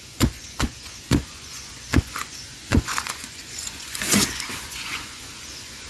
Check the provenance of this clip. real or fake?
fake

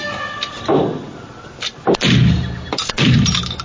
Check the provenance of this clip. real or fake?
real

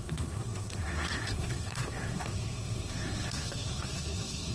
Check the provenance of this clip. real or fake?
fake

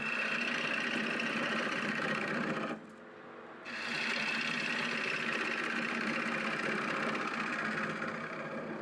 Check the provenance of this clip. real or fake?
real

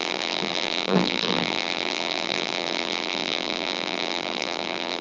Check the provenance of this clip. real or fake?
fake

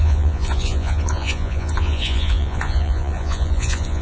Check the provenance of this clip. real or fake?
fake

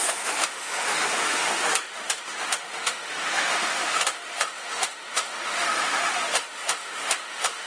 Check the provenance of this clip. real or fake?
fake